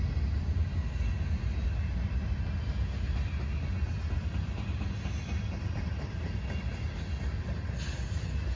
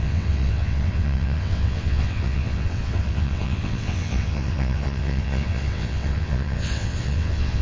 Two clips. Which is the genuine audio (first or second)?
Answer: first